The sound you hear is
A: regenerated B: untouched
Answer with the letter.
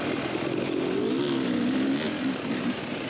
B